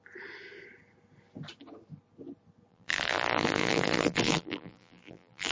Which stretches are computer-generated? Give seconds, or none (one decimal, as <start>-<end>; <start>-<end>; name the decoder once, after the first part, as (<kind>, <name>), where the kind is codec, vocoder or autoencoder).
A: 2.7-5.5 (vocoder, BigVGAN v2)